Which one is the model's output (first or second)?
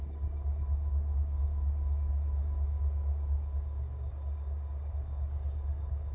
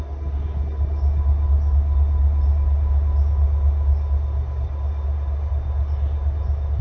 first